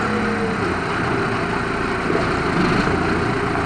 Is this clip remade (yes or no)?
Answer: no